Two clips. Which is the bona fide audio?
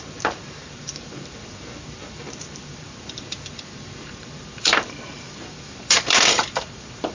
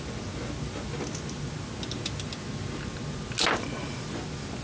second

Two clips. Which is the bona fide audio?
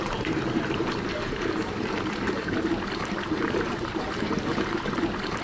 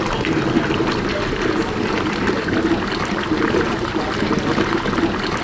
second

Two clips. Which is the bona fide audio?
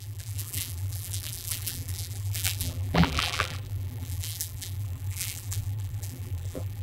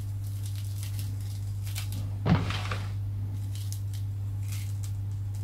second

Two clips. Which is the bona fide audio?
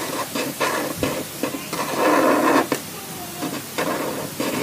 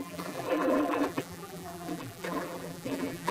first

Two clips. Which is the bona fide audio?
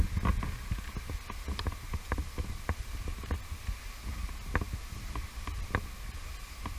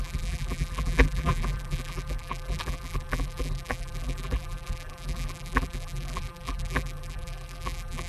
first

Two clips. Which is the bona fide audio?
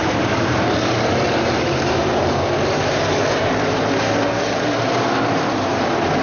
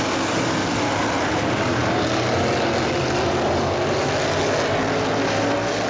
second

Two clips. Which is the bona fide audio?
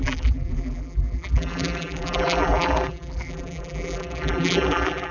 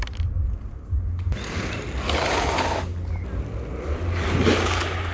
second